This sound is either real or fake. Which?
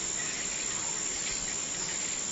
real